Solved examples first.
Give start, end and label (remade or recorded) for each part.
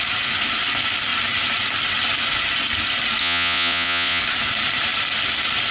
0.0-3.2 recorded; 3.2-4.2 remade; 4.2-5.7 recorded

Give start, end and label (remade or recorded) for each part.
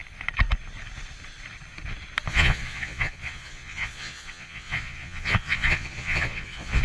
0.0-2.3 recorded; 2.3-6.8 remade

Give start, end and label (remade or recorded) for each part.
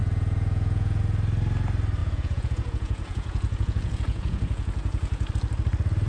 0.0-1.0 remade; 1.0-2.0 recorded; 2.0-5.3 remade; 5.3-6.1 recorded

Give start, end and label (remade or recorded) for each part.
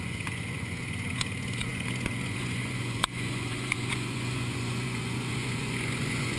0.0-6.4 remade